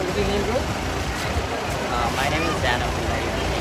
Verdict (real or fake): real